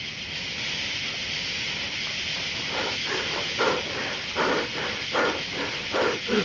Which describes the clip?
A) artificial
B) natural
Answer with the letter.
B